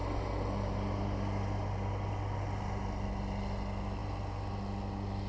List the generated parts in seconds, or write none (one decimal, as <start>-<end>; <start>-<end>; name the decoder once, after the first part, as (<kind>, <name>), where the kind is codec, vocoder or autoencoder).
none